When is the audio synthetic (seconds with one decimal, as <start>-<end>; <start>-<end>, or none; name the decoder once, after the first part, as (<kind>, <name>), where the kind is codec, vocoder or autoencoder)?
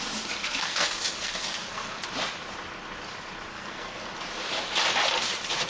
0.4-2.0 (codec, SNAC); 3.5-4.1